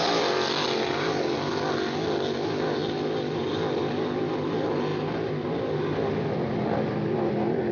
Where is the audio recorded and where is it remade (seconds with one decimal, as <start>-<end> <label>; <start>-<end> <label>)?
0.0-7.7 recorded